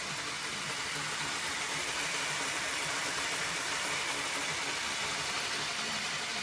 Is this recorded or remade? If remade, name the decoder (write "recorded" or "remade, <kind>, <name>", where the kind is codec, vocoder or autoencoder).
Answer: remade, vocoder, BigVGAN v2